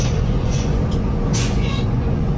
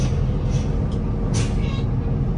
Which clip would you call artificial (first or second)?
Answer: first